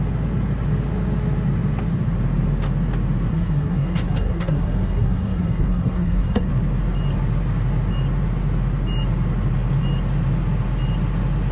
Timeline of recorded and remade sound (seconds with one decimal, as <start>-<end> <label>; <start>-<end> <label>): 0.0-3.3 recorded; 3.3-6.5 remade; 6.5-11.5 recorded